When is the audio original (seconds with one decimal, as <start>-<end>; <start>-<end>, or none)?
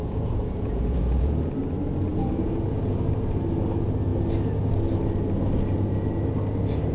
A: 1.5-2.1; 3.0-6.9